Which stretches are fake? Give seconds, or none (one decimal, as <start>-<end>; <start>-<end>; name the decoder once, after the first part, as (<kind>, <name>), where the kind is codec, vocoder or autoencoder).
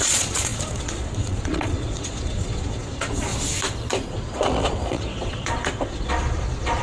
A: 0.0-3.3 (vocoder, Vocos); 4.1-6.8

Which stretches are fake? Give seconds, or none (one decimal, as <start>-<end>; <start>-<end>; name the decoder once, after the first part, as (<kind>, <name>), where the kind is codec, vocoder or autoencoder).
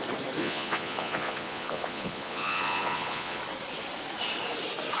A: 0.4-3.4 (vocoder, Vocos)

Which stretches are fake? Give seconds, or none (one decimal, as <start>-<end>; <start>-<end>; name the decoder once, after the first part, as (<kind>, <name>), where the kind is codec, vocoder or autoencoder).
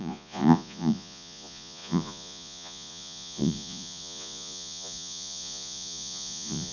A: 0.0-6.7 (vocoder, Vocos)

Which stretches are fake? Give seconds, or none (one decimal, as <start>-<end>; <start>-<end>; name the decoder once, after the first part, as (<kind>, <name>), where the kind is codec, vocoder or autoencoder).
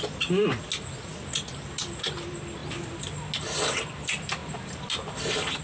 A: none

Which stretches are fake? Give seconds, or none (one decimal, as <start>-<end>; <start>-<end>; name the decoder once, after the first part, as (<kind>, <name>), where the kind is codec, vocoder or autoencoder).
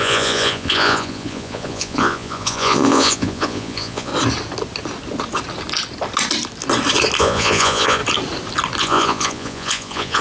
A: 0.0-4.1 (vocoder, Vocos); 7.2-8.0; 8.8-10.2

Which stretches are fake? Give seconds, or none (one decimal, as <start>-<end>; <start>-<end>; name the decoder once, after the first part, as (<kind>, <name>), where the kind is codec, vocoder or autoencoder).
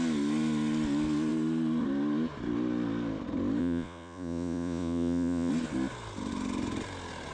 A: 3.6-5.5 (vocoder, Vocos)